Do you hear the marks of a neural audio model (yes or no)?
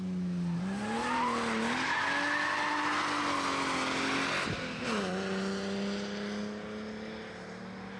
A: no